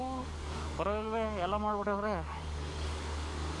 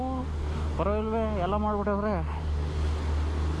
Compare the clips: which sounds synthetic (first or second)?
first